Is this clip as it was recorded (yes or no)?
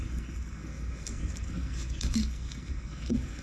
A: no